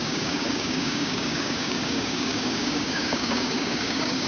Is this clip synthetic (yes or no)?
yes